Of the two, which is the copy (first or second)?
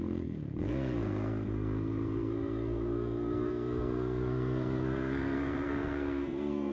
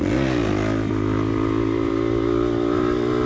first